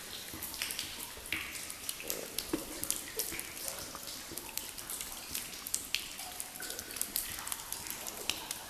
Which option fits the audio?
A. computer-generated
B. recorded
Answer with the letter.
B